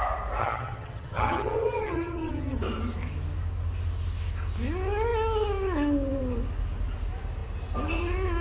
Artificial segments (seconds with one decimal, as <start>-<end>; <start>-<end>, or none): 0.4-2.6